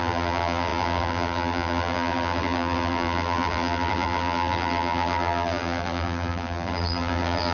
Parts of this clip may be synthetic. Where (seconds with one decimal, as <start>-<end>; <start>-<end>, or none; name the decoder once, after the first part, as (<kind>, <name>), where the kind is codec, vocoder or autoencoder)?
0.0-7.5 (vocoder, BigVGAN v2)